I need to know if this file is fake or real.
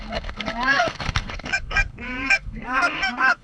fake